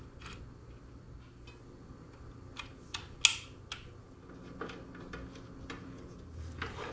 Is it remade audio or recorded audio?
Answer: recorded